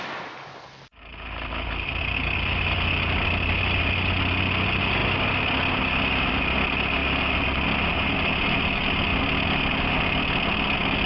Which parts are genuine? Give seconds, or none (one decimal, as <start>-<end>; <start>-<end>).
0.0-11.1